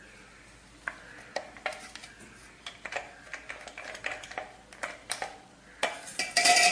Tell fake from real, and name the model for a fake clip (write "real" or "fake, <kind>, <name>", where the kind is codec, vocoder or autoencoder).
real